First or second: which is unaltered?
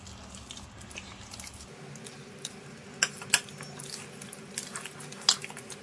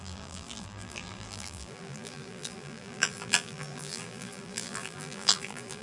first